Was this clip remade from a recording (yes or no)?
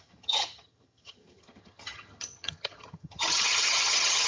yes